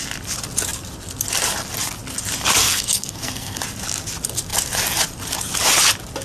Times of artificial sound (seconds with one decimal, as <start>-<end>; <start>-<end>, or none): 2.6-3.6